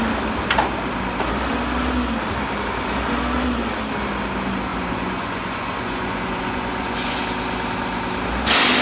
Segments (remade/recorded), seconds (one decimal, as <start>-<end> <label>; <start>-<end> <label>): 0.0-4.7 recorded; 4.7-7.2 remade; 7.2-8.8 recorded